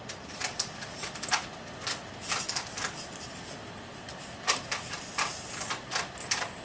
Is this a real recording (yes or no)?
yes